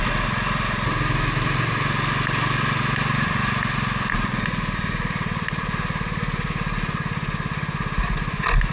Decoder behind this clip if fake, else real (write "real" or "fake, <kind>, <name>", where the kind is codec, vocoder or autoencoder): real